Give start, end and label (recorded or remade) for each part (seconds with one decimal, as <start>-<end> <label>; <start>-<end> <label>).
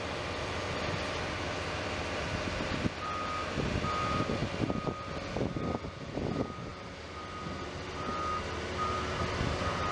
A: 0.0-9.9 recorded